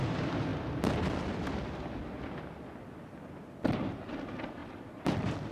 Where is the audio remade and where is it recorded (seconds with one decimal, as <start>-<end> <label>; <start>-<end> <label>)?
0.0-5.5 recorded